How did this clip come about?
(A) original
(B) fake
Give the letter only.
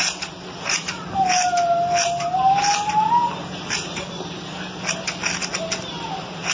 A